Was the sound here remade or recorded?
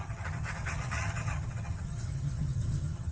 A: remade